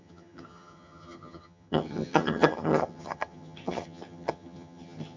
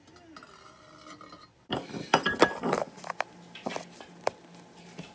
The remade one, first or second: first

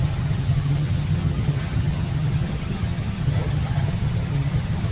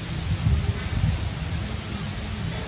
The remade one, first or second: first